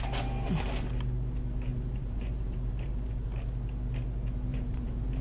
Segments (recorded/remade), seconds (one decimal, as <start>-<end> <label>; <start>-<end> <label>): 0.0-1.7 recorded; 1.7-3.1 remade; 3.1-4.5 recorded; 4.5-5.2 remade